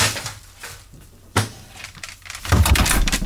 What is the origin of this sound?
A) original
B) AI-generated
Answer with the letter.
B